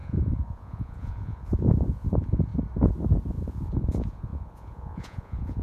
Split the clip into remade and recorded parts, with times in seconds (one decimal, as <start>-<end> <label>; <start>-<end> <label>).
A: 0.0-2.5 remade; 2.5-3.3 recorded; 3.3-5.6 remade